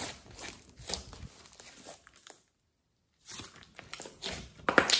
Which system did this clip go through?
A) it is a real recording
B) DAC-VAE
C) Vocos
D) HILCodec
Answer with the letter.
A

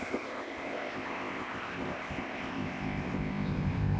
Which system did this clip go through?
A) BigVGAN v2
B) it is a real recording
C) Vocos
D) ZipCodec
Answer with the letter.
D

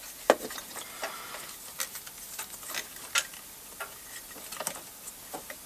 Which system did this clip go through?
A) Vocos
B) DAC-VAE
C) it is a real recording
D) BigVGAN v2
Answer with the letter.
C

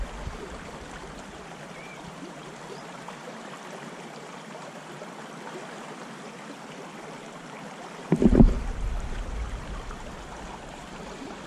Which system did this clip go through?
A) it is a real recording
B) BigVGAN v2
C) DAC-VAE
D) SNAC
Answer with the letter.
B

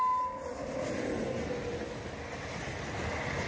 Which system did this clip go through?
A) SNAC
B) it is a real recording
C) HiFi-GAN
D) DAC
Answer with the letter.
B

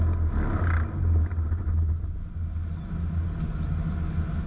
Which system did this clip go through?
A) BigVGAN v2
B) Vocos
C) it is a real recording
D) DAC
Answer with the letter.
C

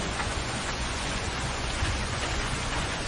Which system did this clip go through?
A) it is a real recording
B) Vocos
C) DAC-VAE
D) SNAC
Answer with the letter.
B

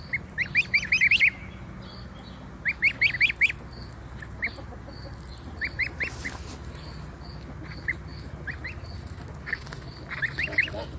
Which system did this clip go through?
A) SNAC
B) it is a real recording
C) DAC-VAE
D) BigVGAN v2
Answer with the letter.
B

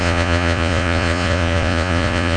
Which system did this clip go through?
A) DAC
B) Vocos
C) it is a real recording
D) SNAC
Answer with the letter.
B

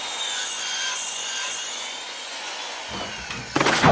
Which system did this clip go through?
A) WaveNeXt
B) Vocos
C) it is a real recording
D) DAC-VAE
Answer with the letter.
B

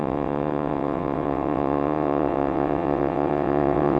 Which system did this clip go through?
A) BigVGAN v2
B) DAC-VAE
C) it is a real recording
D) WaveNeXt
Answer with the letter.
D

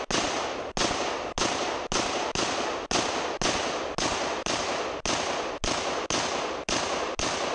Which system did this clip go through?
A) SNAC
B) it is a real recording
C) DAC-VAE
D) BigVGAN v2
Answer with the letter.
B